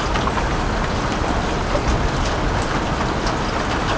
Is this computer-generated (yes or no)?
no